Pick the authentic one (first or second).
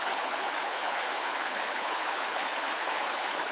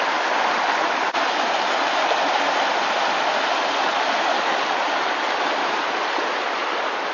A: second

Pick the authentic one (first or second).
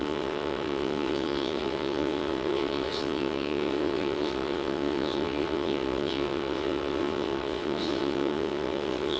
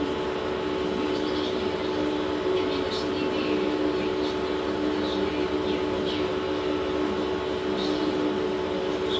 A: second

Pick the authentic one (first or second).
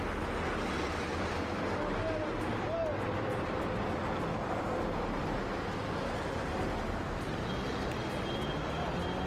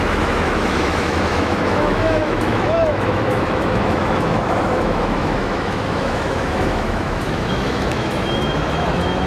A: first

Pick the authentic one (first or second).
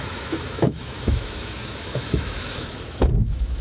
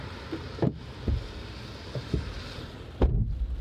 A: second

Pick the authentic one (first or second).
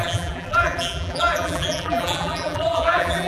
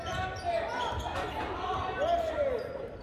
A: second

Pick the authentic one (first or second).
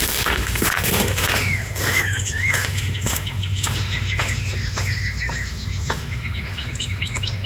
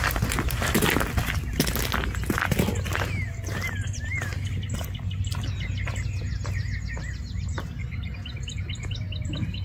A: second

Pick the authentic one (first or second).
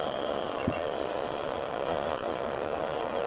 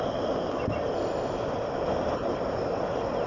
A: second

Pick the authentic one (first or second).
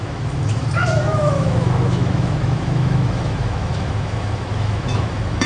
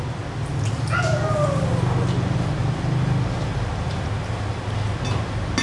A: second